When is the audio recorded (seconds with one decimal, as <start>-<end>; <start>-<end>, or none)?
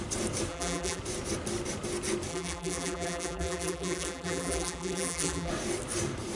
0.0-0.5; 1.0-2.3; 5.5-6.4